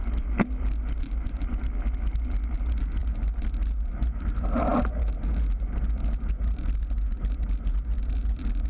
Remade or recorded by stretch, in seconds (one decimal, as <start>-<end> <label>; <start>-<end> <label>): 0.0-8.7 recorded